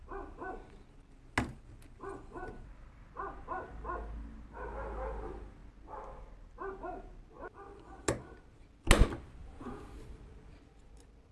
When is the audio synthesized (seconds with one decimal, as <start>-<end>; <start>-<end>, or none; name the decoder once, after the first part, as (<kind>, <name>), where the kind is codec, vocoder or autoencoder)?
9.4-9.9 (vocoder, Vocos)